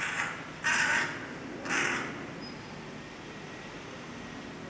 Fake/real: real